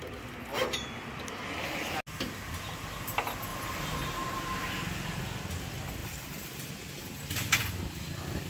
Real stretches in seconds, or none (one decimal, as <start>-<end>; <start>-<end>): 0.0-3.5; 4.3-6.0; 6.7-8.5